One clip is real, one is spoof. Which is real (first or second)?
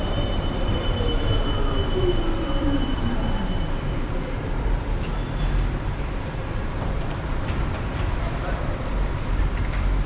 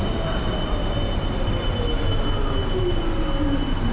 second